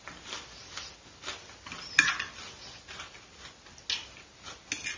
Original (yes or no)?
yes